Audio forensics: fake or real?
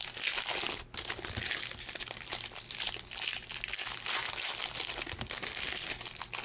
real